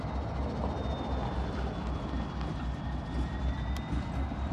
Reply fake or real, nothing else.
real